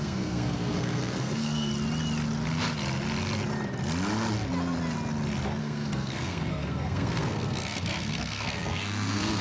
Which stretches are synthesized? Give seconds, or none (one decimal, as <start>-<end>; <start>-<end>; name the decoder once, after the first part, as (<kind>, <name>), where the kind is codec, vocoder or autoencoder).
0.0-1.7 (codec, SNAC); 5.6-9.4